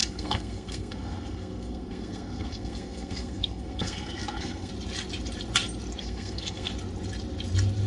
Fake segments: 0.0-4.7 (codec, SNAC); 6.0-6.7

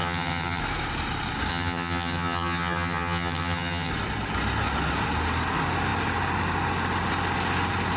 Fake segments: 0.0-0.6 (vocoder, HiFi-GAN); 1.5-3.9

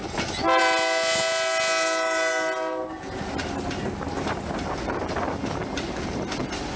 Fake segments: none

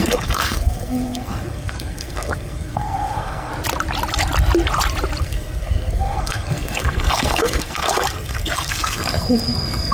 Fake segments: 0.0-3.5 (codec, SNAC); 5.2-9.9

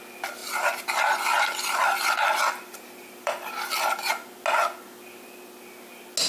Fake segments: 0.4-4.1 (vocoder, BigVGAN v2)

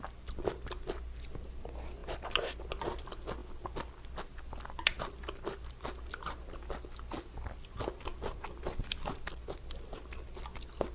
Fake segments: none

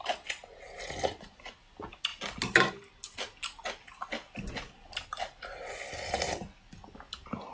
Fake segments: none